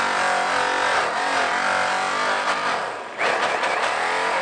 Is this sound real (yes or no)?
yes